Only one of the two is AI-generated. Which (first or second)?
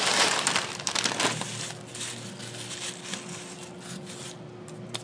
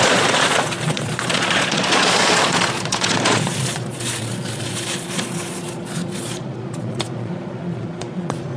second